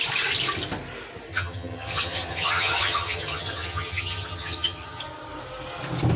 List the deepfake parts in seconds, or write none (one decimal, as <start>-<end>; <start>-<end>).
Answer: 1.3-5.0